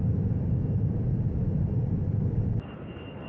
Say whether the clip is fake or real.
real